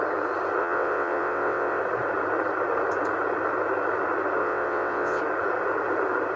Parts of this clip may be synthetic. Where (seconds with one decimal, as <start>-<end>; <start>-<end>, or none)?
0.6-1.8; 4.4-5.2